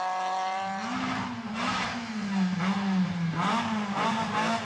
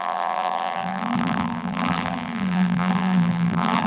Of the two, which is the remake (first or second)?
second